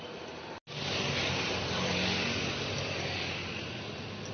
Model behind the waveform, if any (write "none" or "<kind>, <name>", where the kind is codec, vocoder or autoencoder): none